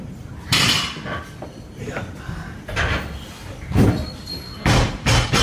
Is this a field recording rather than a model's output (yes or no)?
yes